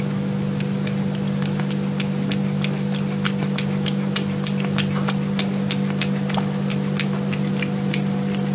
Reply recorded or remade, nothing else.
recorded